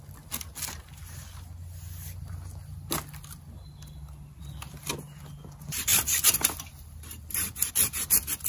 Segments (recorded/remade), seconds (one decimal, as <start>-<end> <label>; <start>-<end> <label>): 0.0-5.9 recorded; 5.9-7.7 remade; 7.7-8.5 recorded